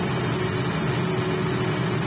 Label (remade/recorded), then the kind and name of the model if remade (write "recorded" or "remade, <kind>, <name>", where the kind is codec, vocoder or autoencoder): recorded